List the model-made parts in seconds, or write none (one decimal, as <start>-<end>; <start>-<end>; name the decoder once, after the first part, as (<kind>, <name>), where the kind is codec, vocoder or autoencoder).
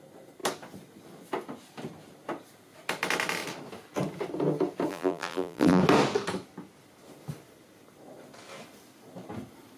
4.9-5.8 (vocoder, BigVGAN v2)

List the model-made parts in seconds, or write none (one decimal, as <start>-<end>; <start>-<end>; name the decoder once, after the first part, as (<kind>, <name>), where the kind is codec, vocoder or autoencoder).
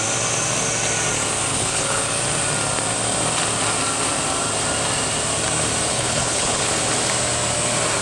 1.5-2.1 (codec, HILCodec); 5.9-6.7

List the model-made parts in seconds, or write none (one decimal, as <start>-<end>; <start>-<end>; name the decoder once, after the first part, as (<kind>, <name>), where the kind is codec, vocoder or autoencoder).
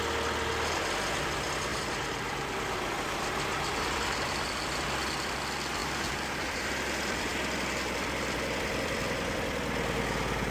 1.7-4.6 (vocoder, BigVGAN v2); 5.8-6.7